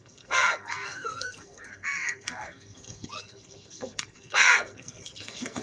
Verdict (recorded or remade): remade